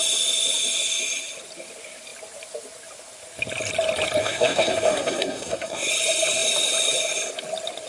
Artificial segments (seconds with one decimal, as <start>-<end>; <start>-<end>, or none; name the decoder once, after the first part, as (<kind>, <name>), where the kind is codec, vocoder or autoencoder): 4.2-5.9 (codec, SNAC)